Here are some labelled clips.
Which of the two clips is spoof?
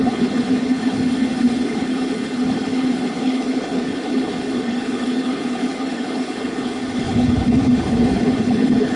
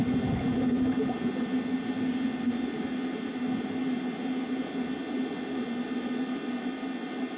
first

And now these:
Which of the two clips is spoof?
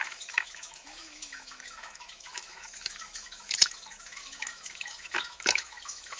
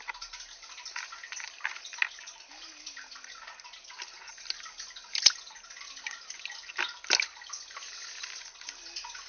first